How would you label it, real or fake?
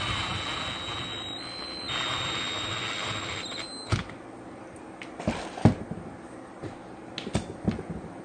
real